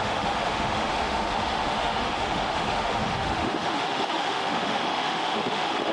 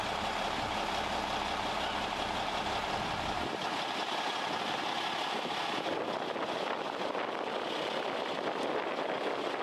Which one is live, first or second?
second